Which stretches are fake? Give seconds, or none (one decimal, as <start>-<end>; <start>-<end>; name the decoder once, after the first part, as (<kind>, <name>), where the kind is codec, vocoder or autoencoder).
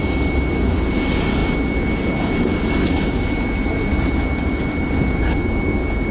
none